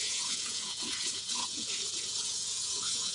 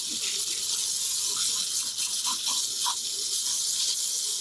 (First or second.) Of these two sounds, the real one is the second